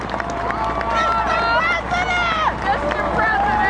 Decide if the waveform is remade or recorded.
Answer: recorded